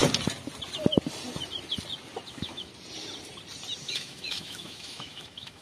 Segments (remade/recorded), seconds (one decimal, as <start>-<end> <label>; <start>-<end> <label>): 0.0-2.3 recorded; 2.3-2.7 remade; 2.7-3.8 recorded; 3.8-5.6 remade